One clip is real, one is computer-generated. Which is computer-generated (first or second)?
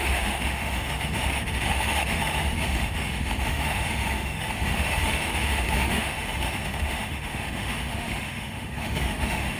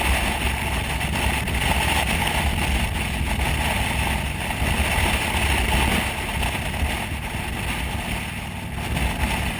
first